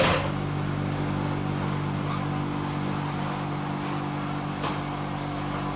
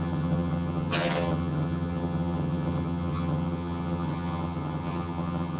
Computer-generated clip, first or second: second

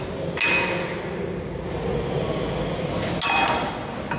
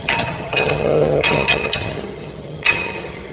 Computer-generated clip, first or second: second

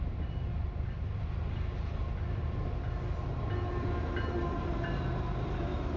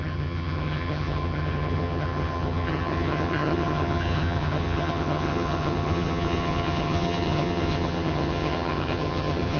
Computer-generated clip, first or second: second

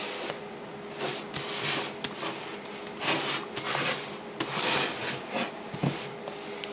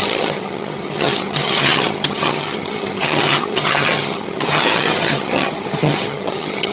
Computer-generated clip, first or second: second